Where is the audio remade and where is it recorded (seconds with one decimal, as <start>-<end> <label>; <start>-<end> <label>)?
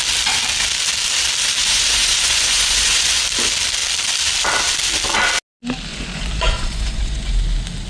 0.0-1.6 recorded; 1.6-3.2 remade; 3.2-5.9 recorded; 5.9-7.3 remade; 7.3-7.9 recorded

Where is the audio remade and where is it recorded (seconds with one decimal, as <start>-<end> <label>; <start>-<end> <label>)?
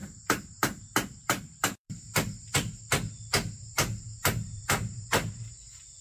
0.0-2.8 remade; 2.8-4.2 recorded; 4.2-6.0 remade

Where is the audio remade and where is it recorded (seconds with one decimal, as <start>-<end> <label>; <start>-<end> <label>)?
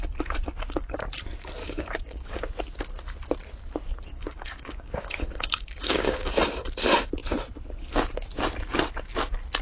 0.0-1.6 recorded; 1.6-2.4 remade; 2.4-4.1 recorded; 4.1-6.3 remade; 6.3-9.6 recorded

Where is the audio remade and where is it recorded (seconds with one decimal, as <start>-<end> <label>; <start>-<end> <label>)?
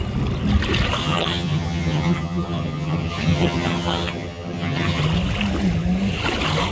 0.0-1.0 recorded; 1.0-5.0 remade; 5.0-6.7 recorded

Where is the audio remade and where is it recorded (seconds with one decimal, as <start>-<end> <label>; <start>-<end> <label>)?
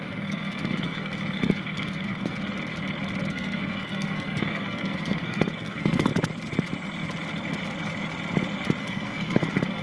0.0-2.4 remade; 2.4-3.3 recorded; 3.3-6.1 remade; 6.1-8.8 recorded; 8.8-9.8 remade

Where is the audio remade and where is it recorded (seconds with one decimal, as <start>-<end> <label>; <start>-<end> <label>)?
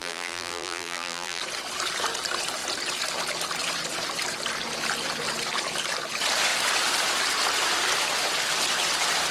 0.0-1.4 remade; 1.4-9.3 recorded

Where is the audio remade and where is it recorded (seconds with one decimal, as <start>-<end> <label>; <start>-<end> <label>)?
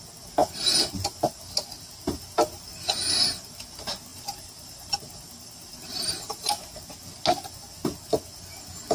0.0-4.1 recorded; 4.1-6.5 remade; 6.5-8.9 recorded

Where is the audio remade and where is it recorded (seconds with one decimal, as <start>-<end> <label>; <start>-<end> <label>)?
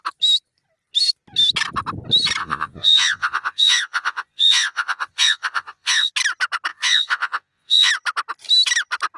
0.0-2.4 recorded; 2.4-6.1 remade; 6.1-6.7 recorded; 6.7-7.9 remade; 7.9-9.2 recorded